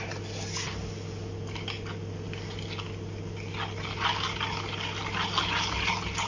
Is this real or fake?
real